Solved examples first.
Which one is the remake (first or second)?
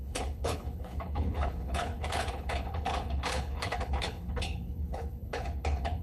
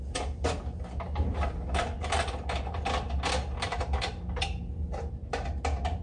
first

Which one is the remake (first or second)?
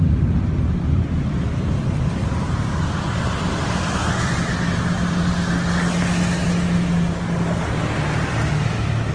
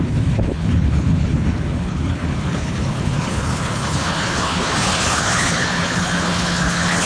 second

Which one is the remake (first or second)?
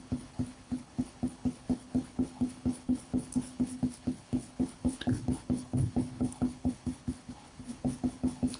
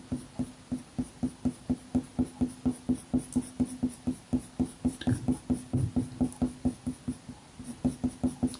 first